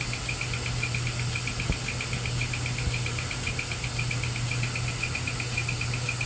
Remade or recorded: recorded